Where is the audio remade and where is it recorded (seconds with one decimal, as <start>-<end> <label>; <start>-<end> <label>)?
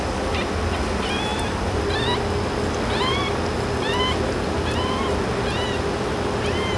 0.0-1.3 recorded; 1.3-1.8 remade; 1.8-6.8 recorded